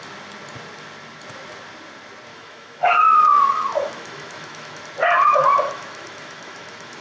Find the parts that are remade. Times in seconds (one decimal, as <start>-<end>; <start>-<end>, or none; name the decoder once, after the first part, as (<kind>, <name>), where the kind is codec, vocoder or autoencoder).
2.3-4.8 (autoencoder, DAC-VAE); 5.3-7.0